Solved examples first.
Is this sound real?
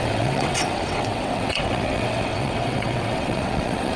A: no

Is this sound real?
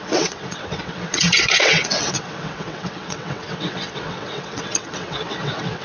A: no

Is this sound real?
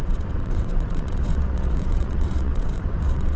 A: no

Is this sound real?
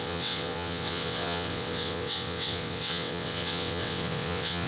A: no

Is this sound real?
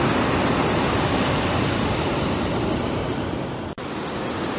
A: yes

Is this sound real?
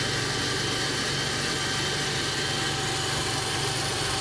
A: yes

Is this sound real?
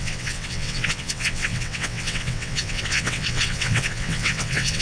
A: no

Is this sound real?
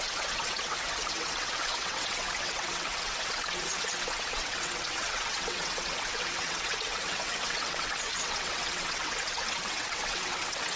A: no